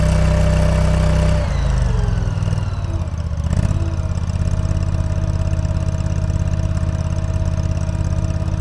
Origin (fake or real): real